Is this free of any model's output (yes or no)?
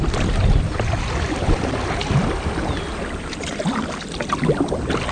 yes